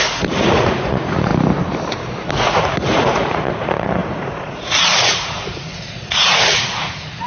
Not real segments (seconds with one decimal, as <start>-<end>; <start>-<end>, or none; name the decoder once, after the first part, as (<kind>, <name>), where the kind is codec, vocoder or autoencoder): 0.0-1.3 (vocoder, Vocos); 2.3-7.3